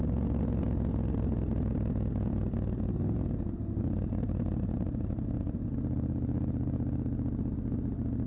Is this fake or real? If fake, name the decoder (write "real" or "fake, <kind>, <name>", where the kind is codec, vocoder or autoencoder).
real